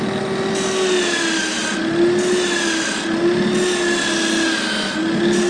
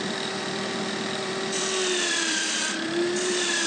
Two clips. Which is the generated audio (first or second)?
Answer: second